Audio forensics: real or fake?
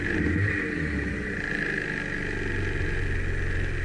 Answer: real